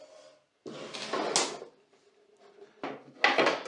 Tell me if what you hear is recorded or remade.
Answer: recorded